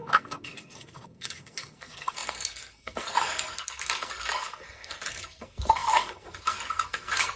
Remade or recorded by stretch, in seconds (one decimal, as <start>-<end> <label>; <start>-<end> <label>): 0.0-7.4 remade